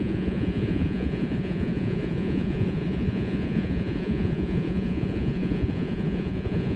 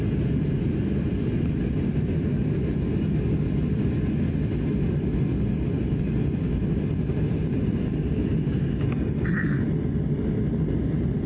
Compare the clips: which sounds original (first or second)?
second